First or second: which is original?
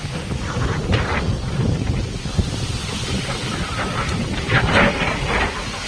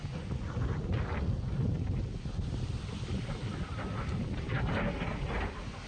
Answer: second